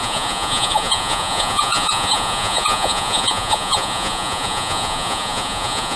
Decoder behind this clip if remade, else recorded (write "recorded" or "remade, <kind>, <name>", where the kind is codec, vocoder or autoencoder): remade, vocoder, Vocos